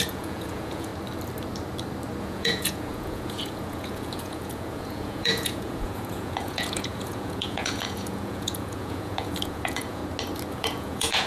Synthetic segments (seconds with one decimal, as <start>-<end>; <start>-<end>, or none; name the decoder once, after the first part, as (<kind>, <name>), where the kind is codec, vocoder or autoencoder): 0.0-0.9 (vocoder, Vocos); 2.2-10.0; 10.5-11.3